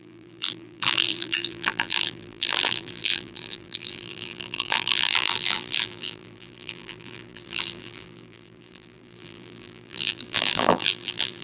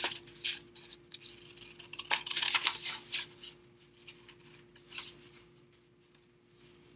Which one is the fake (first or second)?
first